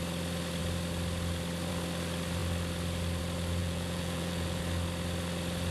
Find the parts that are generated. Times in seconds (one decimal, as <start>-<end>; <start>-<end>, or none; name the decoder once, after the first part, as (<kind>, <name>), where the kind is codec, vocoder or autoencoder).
3.6-4.6 (vocoder, Vocos)